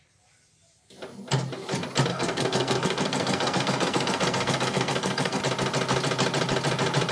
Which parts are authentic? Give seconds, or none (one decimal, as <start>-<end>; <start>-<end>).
0.0-2.1; 5.4-7.1